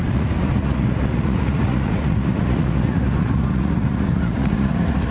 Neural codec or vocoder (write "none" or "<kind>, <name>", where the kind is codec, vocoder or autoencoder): vocoder, Vocos